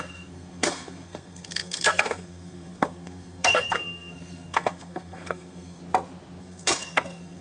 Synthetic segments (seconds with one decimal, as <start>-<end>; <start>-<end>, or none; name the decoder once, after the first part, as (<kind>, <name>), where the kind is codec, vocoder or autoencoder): 0.0-5.8 (codec, SNAC); 6.4-7.4